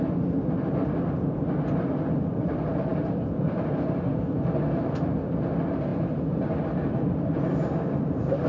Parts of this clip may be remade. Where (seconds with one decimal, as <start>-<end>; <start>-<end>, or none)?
none